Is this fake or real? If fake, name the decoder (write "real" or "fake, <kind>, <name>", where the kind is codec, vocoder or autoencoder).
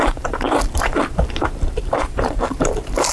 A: fake, vocoder, BigVGAN v2